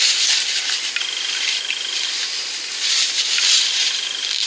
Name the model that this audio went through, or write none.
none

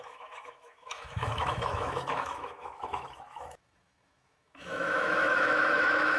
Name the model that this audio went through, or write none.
autoencoder, DAC-VAE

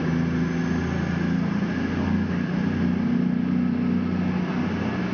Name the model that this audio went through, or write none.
none